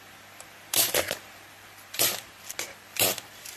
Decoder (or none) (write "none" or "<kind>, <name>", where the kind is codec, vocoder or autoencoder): vocoder, BigVGAN v2